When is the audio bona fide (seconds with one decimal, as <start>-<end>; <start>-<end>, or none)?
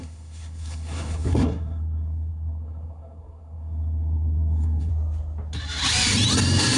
4.9-6.8